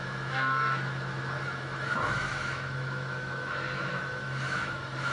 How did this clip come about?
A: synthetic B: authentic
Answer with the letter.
A